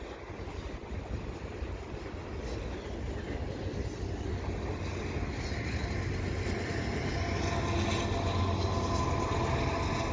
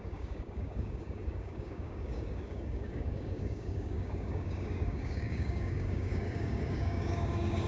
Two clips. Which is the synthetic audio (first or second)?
second